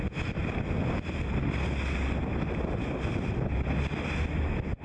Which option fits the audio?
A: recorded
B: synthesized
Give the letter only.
A